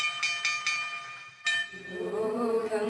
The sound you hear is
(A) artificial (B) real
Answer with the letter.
B